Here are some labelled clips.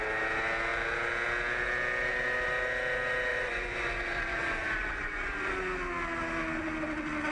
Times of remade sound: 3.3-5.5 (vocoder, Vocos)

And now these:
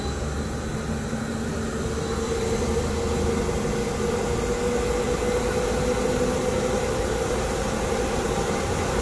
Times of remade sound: none

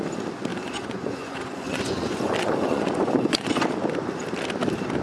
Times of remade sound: 0.5-3.5 (vocoder, Vocos)

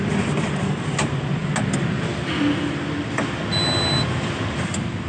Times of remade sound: none

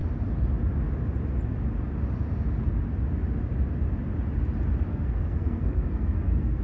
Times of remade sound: 4.9-6.6 (codec, SNAC)